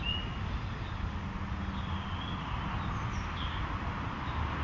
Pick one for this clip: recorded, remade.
recorded